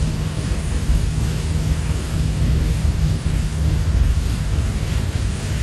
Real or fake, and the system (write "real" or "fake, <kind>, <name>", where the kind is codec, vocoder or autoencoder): fake, codec, DAC